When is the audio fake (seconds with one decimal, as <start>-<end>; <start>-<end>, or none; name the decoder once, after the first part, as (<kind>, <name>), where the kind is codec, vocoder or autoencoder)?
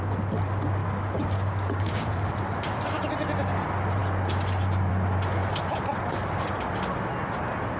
0.8-2.3 (codec, DAC)